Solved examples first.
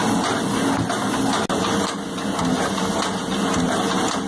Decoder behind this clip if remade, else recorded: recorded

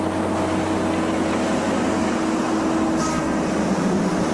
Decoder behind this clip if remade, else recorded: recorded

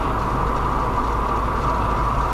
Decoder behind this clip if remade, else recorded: recorded